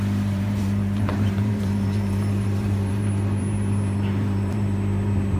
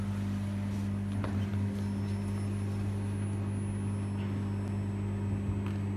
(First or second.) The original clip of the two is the second